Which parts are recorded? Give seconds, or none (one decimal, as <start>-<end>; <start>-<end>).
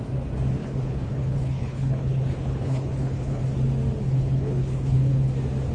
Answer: 0.0-0.6; 3.4-4.1; 5.3-5.7